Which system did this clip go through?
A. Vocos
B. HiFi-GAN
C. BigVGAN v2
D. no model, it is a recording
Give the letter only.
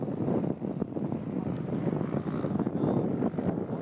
D